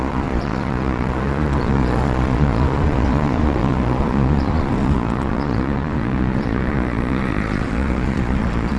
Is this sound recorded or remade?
remade